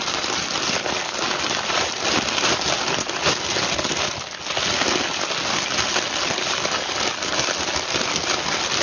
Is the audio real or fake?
real